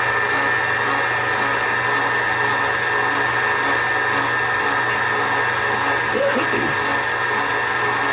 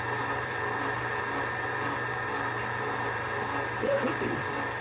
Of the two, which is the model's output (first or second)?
second